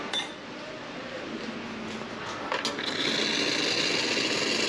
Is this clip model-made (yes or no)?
no